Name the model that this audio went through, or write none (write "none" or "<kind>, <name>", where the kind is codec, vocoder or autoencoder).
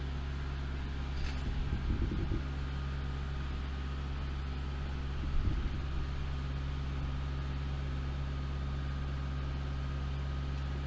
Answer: none